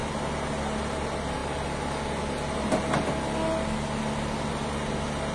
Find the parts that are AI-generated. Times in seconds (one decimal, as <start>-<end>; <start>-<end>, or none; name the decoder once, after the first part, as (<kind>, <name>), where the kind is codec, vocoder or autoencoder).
none